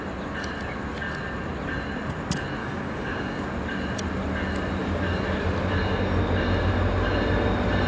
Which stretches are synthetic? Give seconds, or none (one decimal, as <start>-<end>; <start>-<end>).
2.6-3.5